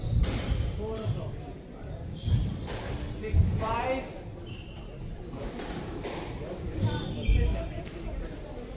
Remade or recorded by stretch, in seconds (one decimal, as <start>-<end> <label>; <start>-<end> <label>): 0.0-2.6 remade; 2.6-4.0 recorded; 4.0-8.8 remade